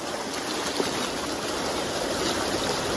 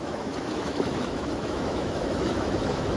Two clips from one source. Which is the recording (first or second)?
first